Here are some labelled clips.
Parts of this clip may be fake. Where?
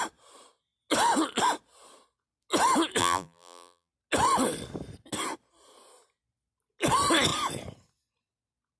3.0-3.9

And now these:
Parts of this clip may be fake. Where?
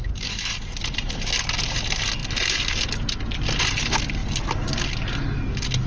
0.0-1.3